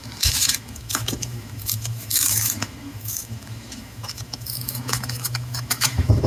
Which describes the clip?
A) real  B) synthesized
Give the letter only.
B